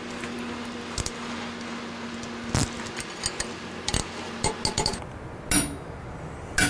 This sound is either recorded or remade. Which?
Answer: recorded